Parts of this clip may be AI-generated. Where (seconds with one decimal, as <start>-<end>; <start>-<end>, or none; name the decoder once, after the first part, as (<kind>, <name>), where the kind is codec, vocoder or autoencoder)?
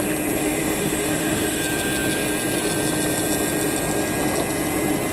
0.4-1.6 (autoencoder, DAC-VAE)